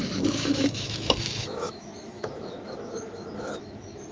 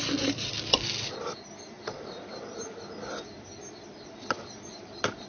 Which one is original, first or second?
second